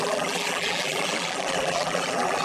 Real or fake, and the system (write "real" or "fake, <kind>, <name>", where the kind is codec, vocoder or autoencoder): fake, vocoder, BigVGAN v2